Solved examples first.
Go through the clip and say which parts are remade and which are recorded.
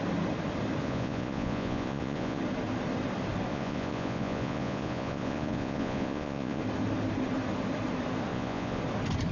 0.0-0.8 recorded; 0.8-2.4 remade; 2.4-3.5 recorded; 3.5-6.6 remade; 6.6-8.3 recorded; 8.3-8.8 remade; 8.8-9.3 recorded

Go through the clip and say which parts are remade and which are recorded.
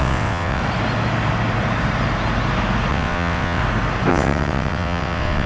0.0-0.6 remade; 0.6-2.9 recorded; 2.9-3.6 remade; 3.6-4.1 recorded; 4.1-5.5 remade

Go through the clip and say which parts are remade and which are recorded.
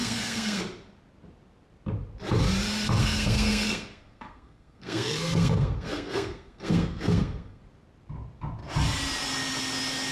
0.0-0.6 remade; 0.6-3.0 recorded; 3.0-7.6 remade; 7.6-10.1 recorded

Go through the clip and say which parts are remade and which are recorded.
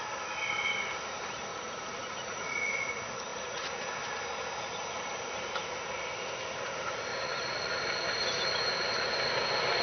0.0-1.5 recorded; 1.5-2.6 remade; 2.6-3.3 recorded; 3.3-3.9 remade; 3.9-7.1 recorded; 7.1-7.8 remade; 7.8-9.8 recorded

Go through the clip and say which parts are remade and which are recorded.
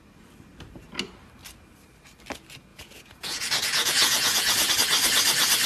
0.0-2.7 recorded; 2.7-4.7 remade; 4.7-5.7 recorded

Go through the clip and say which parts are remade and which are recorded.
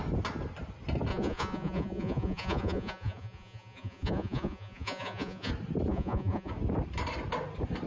0.0-1.1 recorded; 1.1-5.5 remade; 5.5-5.9 recorded; 5.9-6.5 remade; 6.5-7.9 recorded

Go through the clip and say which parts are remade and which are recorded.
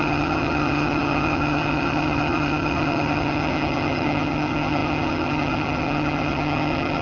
0.0-7.0 remade